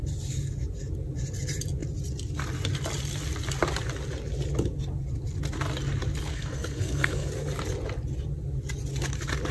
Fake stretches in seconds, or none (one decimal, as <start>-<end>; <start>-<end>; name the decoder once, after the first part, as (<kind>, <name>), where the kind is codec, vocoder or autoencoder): 6.3-7.3 (codec, SNAC)